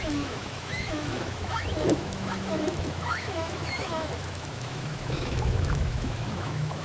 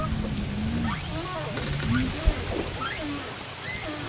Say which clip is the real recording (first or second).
second